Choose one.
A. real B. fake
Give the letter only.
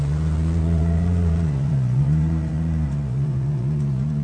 B